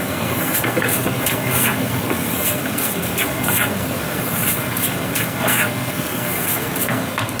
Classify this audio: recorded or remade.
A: remade